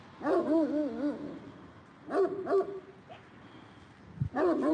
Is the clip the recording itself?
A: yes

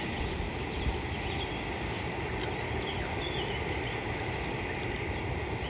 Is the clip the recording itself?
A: yes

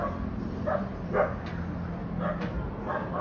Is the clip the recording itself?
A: yes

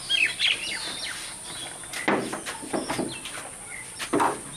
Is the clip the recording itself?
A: yes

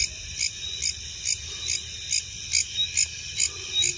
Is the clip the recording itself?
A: yes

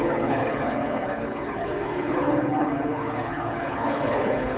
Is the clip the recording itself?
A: no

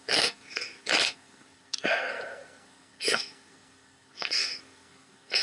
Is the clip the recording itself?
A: no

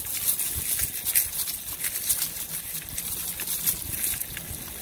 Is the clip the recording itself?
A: yes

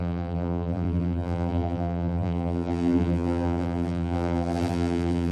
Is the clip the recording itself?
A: no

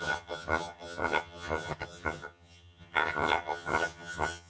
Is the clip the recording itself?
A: no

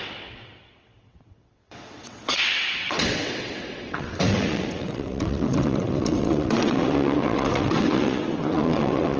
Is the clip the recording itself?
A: no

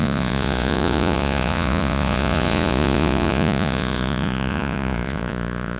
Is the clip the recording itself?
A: no